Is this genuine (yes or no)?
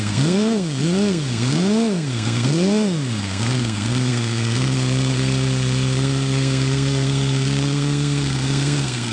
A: no